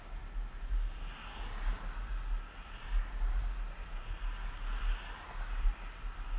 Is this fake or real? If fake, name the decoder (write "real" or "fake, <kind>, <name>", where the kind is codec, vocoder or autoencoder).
real